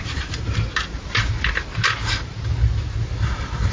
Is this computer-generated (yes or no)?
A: no